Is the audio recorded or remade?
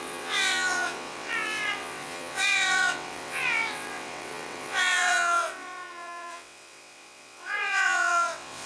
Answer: remade